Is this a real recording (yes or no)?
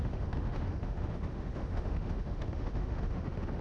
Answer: no